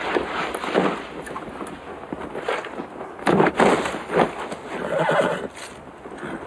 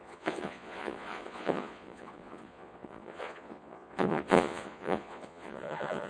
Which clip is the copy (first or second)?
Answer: second